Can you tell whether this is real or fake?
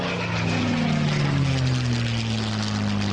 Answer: real